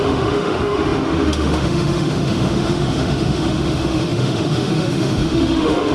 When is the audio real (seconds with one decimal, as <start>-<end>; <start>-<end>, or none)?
none